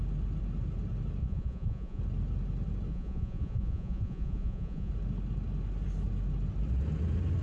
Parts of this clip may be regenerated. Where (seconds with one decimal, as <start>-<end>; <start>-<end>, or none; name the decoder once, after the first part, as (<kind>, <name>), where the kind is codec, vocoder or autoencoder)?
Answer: 1.2-2.0 (vocoder, Vocos); 2.9-4.9